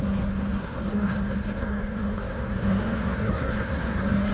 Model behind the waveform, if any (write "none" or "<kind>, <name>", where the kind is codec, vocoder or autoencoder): codec, SNAC